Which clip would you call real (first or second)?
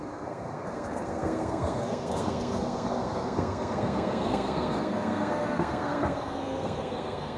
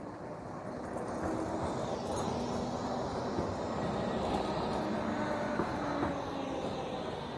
second